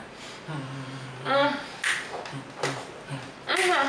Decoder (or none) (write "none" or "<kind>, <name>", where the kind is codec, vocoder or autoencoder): none